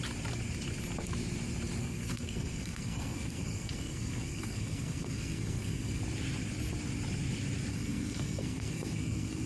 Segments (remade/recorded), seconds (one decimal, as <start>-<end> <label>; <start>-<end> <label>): 0.0-1.8 recorded; 1.8-6.0 remade; 6.0-7.7 recorded; 7.7-9.5 remade